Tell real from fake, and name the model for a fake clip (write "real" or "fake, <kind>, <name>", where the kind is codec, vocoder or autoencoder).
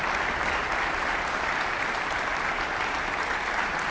real